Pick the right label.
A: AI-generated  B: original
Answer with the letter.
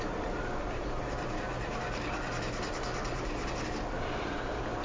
B